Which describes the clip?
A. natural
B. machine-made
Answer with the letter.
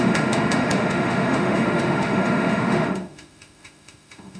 B